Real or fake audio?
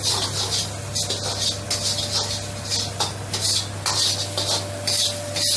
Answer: real